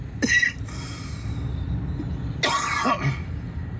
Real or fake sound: real